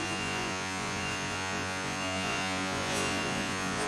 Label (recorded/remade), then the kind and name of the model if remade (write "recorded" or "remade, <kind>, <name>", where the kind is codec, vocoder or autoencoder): remade, vocoder, Vocos